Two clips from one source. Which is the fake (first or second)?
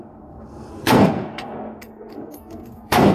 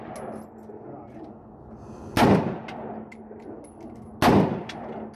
first